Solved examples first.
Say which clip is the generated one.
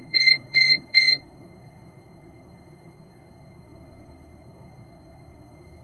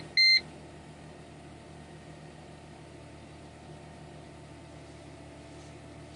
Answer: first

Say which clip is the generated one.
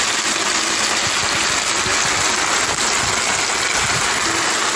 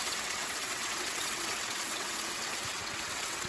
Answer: second